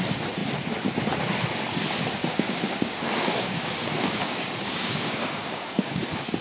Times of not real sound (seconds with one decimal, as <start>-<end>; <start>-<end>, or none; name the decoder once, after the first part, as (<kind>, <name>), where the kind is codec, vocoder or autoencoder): 2.2-6.0 (codec, DAC)